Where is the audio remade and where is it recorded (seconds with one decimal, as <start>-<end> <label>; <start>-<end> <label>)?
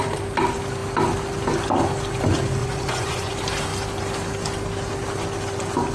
0.0-2.6 recorded; 2.6-3.3 remade; 3.3-5.9 recorded